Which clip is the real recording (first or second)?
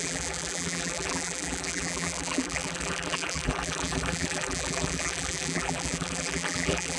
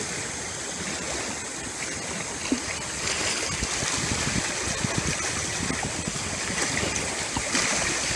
second